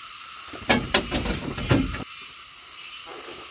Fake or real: real